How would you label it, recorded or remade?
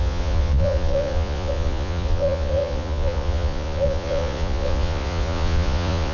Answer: remade